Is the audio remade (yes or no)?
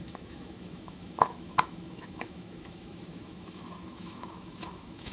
yes